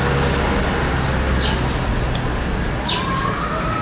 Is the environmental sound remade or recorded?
recorded